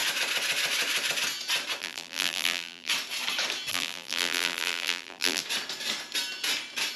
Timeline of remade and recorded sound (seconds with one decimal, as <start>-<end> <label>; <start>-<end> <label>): 0.0-1.8 recorded; 1.8-2.9 remade; 2.9-3.7 recorded; 3.7-5.4 remade; 5.4-7.0 recorded

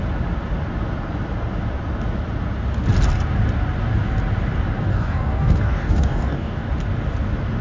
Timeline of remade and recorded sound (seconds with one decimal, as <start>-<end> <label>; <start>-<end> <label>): 0.0-4.9 recorded; 4.9-6.7 remade; 6.7-7.6 recorded

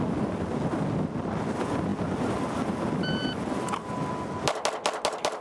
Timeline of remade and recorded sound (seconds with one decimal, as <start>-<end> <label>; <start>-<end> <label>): 0.0-5.4 recorded